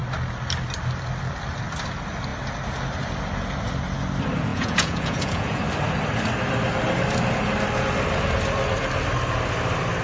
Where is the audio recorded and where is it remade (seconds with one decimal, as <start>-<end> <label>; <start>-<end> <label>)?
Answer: 0.0-4.5 recorded; 4.5-5.6 remade; 5.6-10.0 recorded